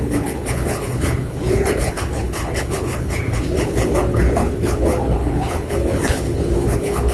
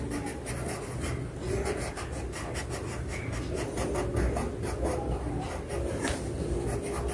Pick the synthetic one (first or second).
first